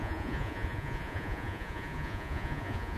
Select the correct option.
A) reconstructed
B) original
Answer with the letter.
A